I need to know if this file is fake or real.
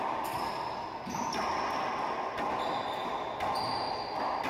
real